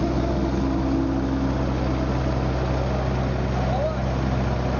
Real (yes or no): yes